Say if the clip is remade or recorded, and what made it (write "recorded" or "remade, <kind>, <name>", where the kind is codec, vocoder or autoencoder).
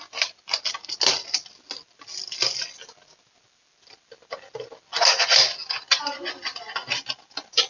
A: recorded